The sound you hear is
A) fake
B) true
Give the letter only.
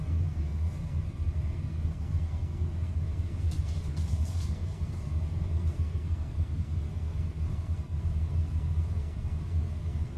A